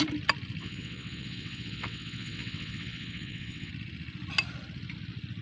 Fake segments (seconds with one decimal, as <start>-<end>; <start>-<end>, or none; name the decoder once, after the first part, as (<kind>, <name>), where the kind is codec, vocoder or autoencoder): 0.6-3.7 (vocoder, WaveNeXt)